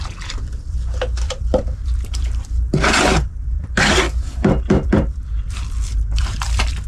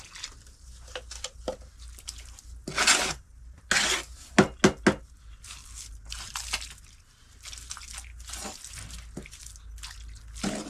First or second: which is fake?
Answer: first